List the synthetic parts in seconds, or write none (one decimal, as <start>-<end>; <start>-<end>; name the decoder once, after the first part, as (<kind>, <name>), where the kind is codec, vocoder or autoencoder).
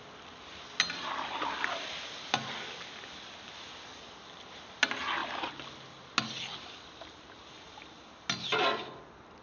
none